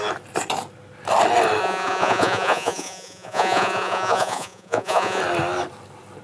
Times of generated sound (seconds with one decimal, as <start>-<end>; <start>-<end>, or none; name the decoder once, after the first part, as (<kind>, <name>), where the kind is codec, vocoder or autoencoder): 1.6-5.2 (vocoder, Vocos)